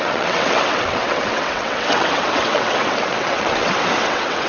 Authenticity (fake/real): fake